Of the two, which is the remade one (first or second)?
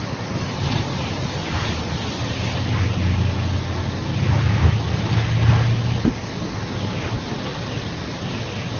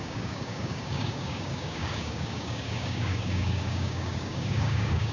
second